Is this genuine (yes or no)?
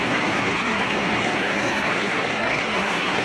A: no